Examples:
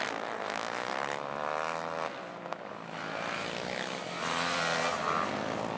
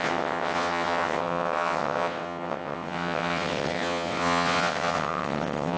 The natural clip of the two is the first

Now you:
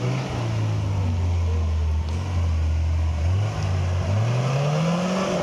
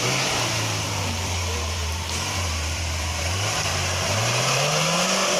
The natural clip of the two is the first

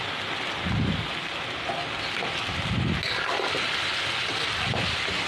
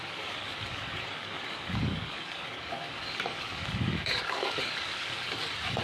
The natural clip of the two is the first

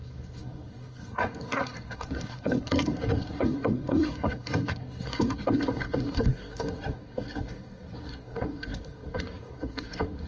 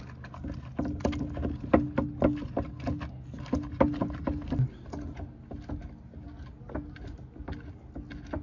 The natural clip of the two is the second